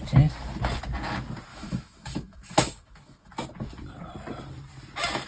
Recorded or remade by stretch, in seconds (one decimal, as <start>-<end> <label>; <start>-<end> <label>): 0.0-1.5 recorded; 1.5-3.3 remade; 3.3-5.3 recorded